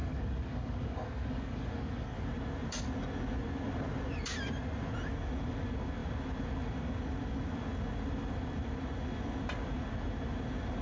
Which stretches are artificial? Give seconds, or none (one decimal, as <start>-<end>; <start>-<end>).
0.0-2.2